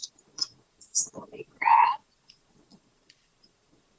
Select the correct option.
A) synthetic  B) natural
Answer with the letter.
A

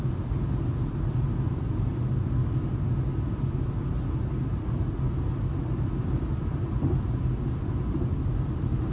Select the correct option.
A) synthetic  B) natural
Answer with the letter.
B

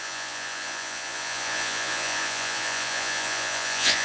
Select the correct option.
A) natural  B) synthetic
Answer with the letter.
B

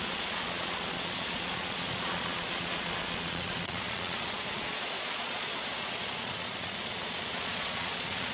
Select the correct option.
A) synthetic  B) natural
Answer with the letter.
A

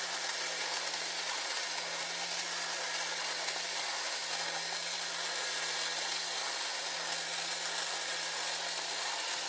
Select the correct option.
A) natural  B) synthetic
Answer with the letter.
A